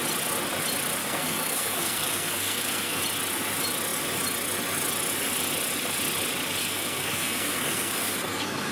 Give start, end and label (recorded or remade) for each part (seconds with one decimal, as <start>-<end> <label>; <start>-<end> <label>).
0.0-1.0 recorded; 1.0-3.0 remade; 3.0-6.6 recorded; 6.6-8.7 remade